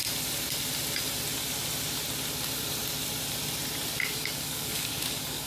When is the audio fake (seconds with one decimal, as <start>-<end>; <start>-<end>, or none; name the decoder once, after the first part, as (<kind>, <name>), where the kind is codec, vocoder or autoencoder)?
4.1-5.5 (codec, DAC)